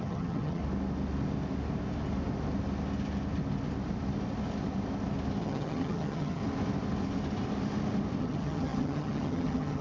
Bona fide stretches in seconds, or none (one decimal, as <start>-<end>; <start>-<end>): 0.6-5.4; 6.4-8.2